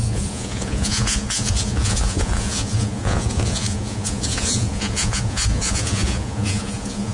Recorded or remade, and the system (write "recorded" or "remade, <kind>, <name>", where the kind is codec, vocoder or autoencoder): remade, vocoder, Vocos